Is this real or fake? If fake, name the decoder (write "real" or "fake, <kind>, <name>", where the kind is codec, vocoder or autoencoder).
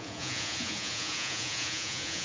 fake, vocoder, Vocos